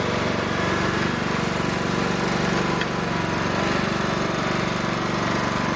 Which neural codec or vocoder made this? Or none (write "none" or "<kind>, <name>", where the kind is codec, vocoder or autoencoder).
none